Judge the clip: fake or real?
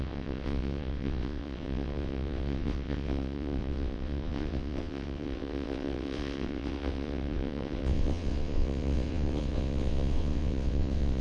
fake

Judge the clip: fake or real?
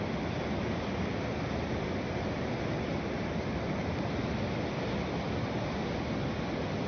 real